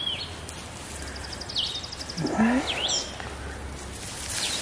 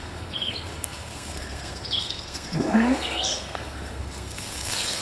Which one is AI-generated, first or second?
second